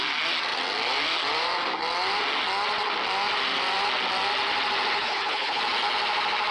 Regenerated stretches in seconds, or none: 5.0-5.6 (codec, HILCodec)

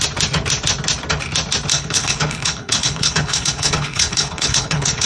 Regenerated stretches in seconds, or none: 1.7-5.1 (codec, HILCodec)

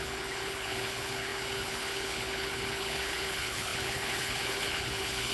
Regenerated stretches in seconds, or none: 0.0-5.3 (codec, HILCodec)

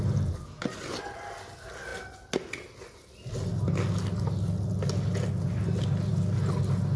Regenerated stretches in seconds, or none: none